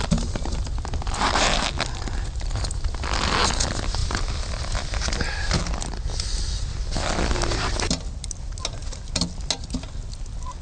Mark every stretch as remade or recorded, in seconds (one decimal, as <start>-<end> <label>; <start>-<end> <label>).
0.0-10.6 recorded